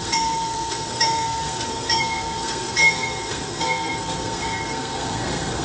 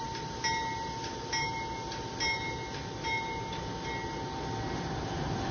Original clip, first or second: second